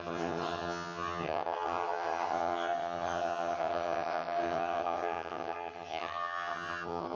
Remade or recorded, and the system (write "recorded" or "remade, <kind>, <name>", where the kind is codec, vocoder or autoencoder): remade, vocoder, HiFi-GAN